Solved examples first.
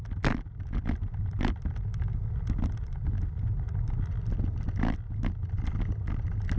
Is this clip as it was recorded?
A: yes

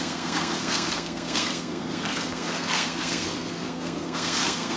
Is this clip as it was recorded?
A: no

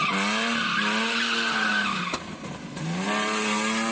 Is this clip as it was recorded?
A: yes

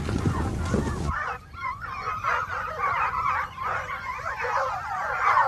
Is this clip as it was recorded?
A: no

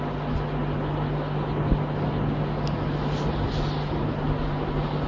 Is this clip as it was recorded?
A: yes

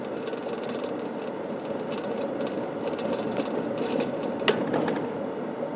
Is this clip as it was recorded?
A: yes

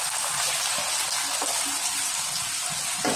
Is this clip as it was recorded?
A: yes